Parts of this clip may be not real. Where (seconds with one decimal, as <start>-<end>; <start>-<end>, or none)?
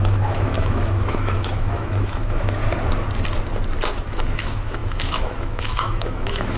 0.0-2.6; 3.9-6.6